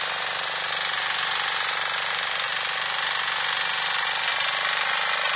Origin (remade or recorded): recorded